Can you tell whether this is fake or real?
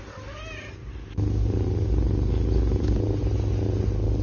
real